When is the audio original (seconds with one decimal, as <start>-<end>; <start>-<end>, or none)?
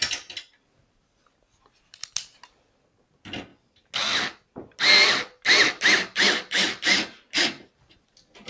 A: 0.0-8.5